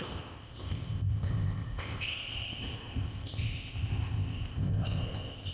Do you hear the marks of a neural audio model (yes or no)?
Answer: yes